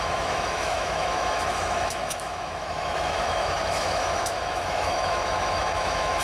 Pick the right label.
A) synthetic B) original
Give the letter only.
A